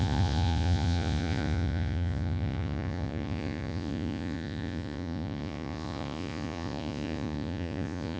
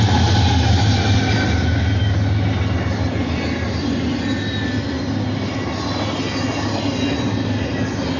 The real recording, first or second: second